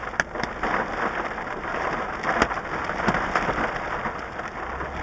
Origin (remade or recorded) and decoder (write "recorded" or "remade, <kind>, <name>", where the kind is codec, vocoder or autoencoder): recorded